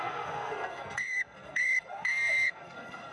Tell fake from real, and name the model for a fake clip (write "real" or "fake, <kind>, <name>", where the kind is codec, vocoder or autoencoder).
fake, codec, SNAC